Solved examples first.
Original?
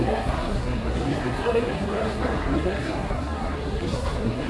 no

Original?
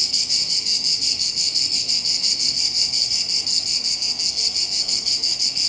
no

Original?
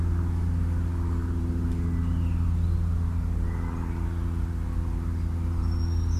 yes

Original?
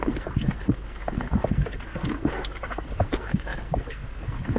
no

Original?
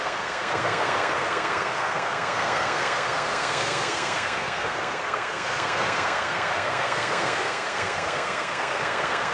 no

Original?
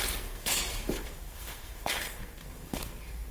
no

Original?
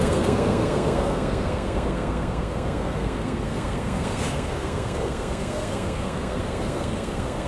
no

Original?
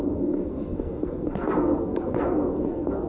no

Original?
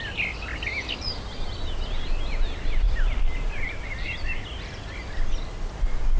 yes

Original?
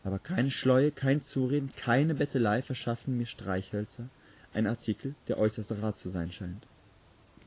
yes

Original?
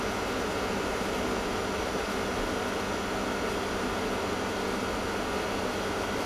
yes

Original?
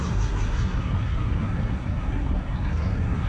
no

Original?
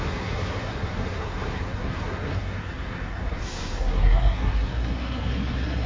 no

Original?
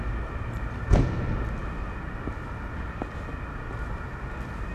yes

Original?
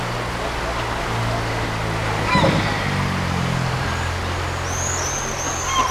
yes